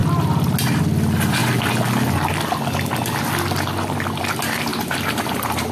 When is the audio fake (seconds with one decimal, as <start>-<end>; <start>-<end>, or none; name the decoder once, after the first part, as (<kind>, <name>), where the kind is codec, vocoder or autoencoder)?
4.7-5.7 (vocoder, BigVGAN v2)